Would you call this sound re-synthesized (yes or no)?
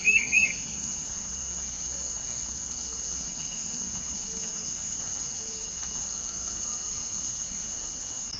yes